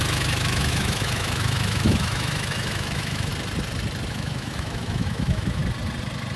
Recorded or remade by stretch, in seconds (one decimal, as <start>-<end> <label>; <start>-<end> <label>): 0.0-3.3 remade; 3.3-4.1 recorded; 4.1-5.6 remade; 5.6-6.4 recorded